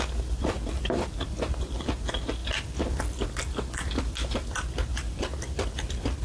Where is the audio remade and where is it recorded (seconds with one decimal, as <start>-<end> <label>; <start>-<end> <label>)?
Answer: 0.0-6.2 recorded